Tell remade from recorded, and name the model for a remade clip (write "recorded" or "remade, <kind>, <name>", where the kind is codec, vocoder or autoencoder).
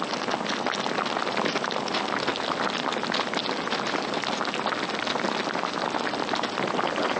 recorded